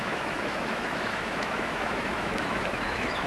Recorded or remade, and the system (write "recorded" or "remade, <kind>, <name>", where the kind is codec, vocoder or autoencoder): remade, autoencoder, DAC-VAE